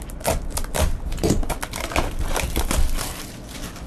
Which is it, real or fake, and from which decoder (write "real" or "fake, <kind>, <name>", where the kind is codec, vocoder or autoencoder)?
real